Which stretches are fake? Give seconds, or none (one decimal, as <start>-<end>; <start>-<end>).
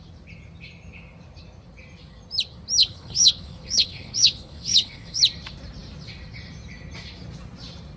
2.8-5.2